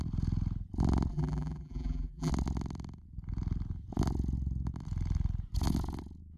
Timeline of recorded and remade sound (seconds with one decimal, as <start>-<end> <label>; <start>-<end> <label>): 0.0-1.1 recorded; 1.1-2.3 remade; 2.3-6.4 recorded